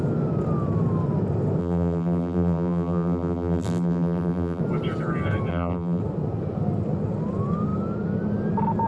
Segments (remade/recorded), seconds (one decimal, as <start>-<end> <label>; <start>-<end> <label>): 0.0-1.6 recorded; 1.6-4.6 remade; 4.6-5.5 recorded; 5.5-6.0 remade; 6.0-8.9 recorded